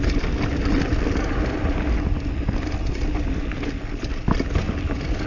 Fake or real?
real